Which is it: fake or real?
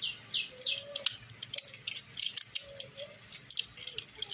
real